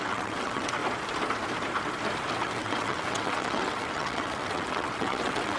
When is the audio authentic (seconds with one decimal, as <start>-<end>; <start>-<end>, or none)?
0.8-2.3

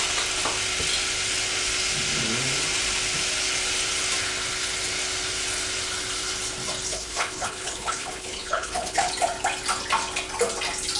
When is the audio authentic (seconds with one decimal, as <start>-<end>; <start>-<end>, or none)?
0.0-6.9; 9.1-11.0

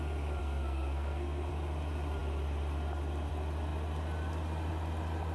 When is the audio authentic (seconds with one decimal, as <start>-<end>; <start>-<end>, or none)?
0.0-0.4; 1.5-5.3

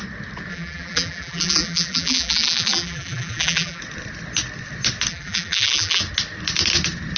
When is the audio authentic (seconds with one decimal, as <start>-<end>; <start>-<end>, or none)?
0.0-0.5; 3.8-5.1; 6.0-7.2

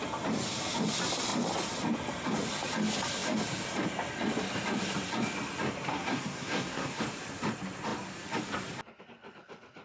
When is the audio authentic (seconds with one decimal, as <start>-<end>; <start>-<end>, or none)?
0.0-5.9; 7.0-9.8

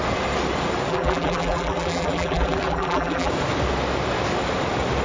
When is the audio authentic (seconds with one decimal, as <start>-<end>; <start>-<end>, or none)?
0.0-0.9; 3.3-5.0